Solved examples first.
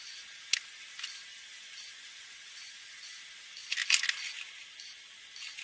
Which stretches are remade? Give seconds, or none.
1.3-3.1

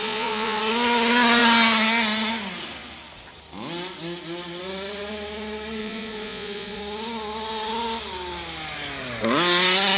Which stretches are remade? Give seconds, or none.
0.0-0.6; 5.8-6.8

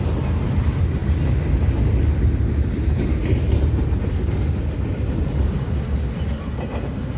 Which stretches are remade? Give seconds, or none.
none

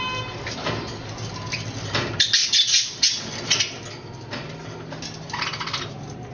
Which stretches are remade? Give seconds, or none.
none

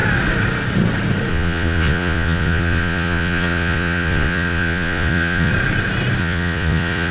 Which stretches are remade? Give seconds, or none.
1.3-5.5; 6.2-7.1

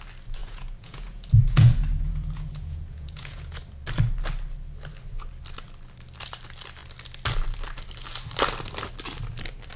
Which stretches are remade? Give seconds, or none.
0.4-3.6

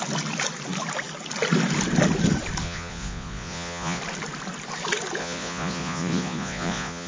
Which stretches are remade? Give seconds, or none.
2.6-4.0; 5.2-7.1

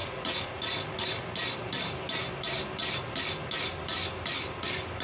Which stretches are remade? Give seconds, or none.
0.0-0.6